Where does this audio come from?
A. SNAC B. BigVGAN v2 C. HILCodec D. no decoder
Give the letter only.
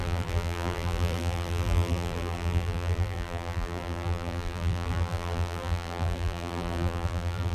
B